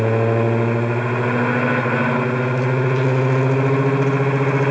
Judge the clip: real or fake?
real